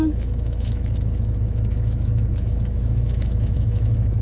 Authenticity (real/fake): fake